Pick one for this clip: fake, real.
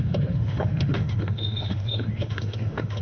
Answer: fake